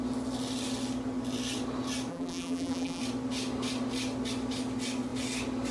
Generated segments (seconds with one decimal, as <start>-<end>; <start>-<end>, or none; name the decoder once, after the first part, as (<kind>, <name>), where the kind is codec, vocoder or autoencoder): 2.1-3.0 (vocoder, BigVGAN v2)